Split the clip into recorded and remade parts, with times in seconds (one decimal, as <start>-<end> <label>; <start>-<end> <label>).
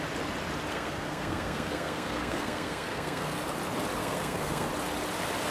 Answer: 0.0-0.7 recorded; 0.7-3.4 remade; 3.4-4.0 recorded; 4.0-4.7 remade; 4.7-5.5 recorded